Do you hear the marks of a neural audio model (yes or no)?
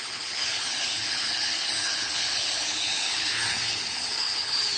yes